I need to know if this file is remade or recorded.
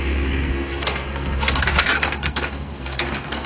remade